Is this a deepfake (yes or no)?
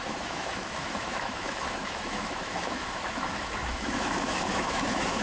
yes